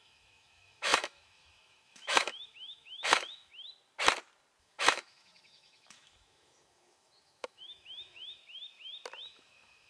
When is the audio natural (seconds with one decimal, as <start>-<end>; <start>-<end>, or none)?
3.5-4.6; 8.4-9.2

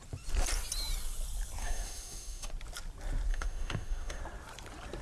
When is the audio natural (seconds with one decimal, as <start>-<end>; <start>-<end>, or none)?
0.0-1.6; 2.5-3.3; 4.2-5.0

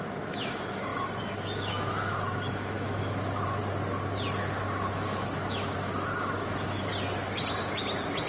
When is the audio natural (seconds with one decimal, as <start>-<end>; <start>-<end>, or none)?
3.6-4.9; 6.9-8.3